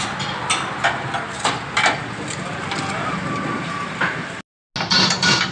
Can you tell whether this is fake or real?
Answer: real